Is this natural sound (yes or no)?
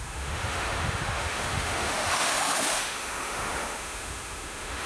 no